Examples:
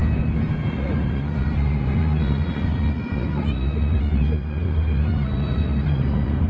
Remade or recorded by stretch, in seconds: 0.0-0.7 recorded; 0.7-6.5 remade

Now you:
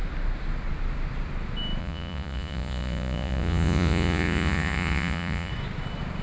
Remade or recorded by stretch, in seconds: 0.0-1.8 recorded; 1.8-5.5 remade; 5.5-6.2 recorded

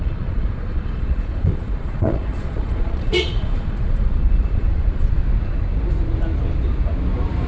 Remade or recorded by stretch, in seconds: 0.0-5.2 remade; 5.2-7.5 recorded

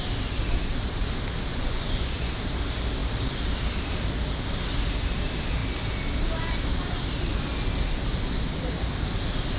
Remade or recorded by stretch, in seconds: 0.0-1.5 recorded; 1.5-2.3 remade; 2.3-9.6 recorded

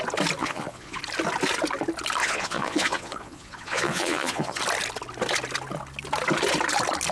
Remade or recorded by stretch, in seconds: 0.0-0.4 recorded; 0.4-1.0 remade; 1.0-2.2 recorded; 2.2-4.6 remade; 4.6-7.1 recorded

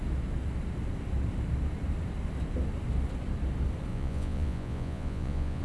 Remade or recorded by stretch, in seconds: 0.0-3.9 recorded; 3.9-5.6 remade

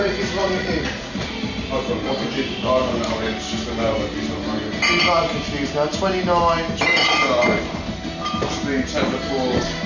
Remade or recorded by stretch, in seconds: 0.0-0.4 recorded; 0.4-1.3 remade; 1.3-9.9 recorded

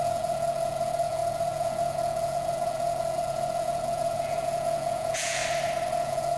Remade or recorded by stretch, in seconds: 0.0-5.4 remade; 5.4-5.9 recorded; 5.9-6.4 remade